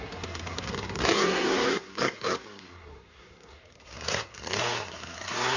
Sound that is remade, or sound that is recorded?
remade